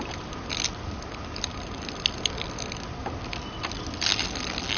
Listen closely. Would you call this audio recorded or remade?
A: recorded